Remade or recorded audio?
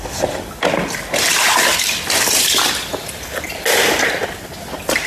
recorded